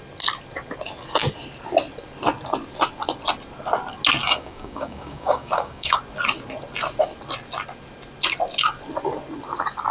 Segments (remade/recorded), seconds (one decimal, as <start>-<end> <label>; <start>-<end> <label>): 0.0-4.2 recorded; 4.2-6.0 remade; 6.0-9.9 recorded